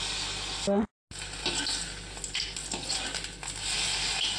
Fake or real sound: real